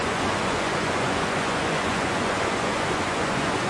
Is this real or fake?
fake